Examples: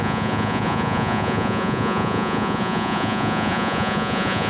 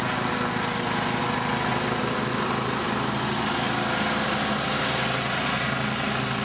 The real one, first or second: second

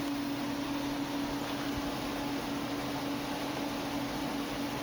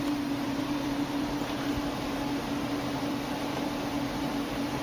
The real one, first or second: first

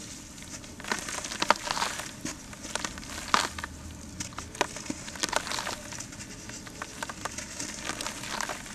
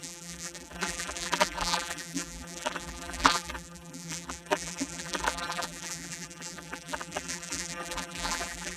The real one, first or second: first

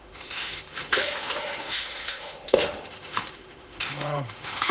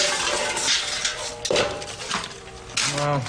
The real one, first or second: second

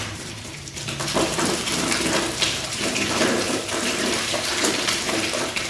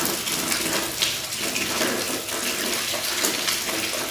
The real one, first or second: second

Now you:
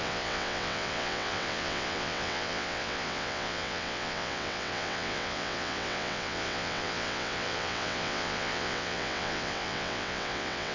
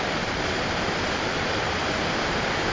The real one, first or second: second